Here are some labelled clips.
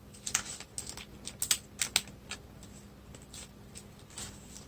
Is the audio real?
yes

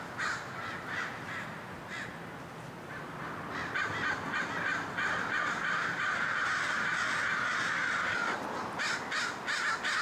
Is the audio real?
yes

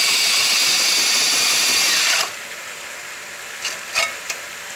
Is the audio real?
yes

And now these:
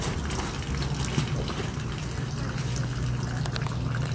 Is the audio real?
yes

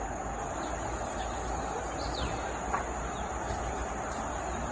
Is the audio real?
yes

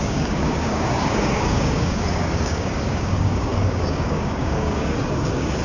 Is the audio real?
no